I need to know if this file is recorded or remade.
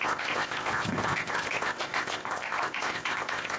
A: remade